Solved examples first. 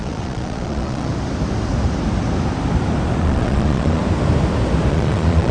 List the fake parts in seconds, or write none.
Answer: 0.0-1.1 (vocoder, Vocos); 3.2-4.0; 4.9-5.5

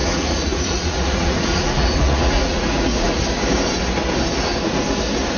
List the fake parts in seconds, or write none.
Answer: 0.0-3.2 (vocoder, Vocos)